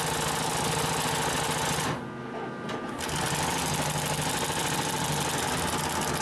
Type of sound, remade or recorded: recorded